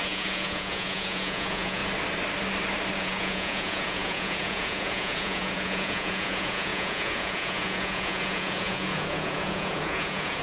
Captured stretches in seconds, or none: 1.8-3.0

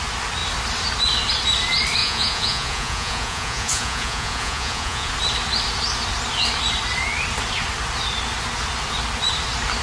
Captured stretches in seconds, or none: 0.0-2.0; 5.1-9.8